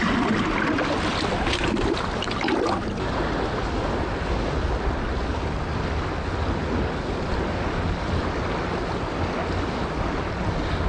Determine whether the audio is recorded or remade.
recorded